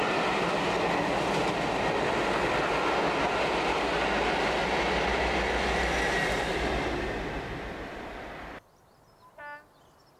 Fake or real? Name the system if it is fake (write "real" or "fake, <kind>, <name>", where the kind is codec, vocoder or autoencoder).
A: real